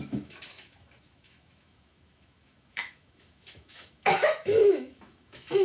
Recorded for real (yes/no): no